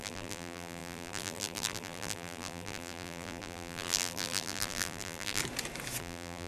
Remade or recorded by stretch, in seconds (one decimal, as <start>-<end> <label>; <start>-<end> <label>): 0.0-5.4 remade; 5.4-6.0 recorded; 6.0-6.5 remade